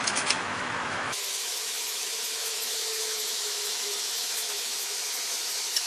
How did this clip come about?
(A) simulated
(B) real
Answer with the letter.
A